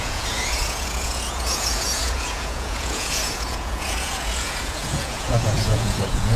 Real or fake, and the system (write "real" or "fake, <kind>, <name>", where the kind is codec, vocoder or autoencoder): fake, vocoder, Vocos